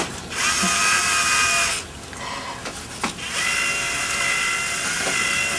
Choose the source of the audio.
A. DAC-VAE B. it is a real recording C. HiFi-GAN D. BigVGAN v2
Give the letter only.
B